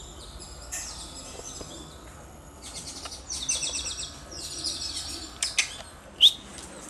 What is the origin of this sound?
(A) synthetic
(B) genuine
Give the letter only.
B